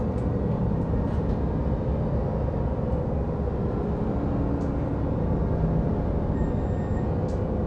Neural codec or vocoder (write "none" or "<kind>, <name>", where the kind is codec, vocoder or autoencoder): none